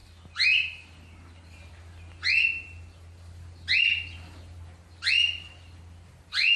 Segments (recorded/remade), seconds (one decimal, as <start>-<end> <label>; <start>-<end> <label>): 0.0-6.6 recorded